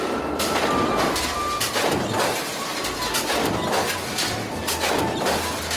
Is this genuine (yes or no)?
yes